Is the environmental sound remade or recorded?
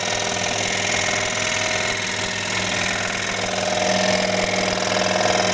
recorded